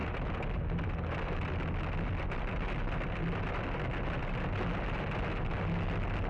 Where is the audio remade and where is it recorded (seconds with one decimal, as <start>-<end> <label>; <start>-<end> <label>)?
0.0-6.3 recorded